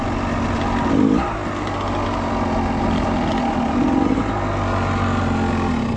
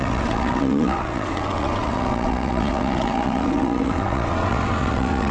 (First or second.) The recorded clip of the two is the first